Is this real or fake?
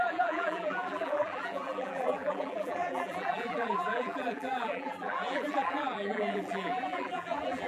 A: fake